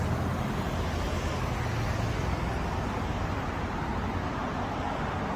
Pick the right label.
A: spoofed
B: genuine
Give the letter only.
B